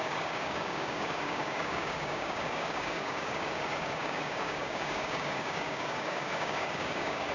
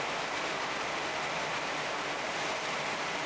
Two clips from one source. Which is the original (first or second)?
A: second